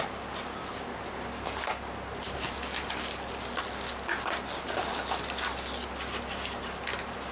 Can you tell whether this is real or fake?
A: real